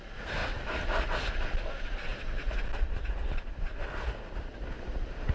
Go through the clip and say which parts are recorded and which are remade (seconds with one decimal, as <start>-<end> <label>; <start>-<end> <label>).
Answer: 0.0-5.3 recorded